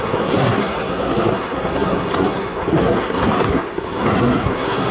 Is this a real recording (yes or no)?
no